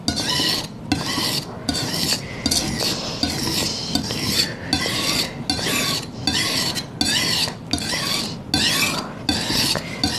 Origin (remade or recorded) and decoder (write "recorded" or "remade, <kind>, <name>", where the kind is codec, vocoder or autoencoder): recorded